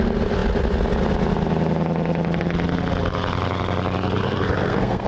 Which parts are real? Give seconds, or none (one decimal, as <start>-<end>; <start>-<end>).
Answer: 0.0-4.2